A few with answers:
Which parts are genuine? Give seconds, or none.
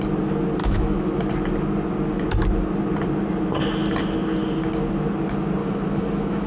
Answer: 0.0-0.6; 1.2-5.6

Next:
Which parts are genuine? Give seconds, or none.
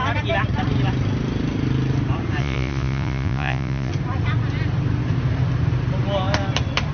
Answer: 0.0-2.4; 3.9-6.9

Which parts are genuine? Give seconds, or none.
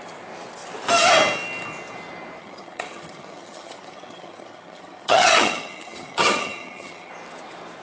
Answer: 0.0-2.4; 7.1-7.8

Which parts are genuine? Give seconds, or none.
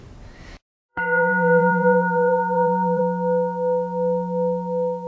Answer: 0.0-0.9; 3.0-5.1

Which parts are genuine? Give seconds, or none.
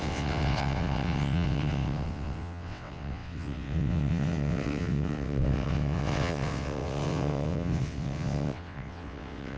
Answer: none